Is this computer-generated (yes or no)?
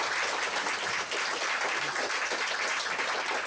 no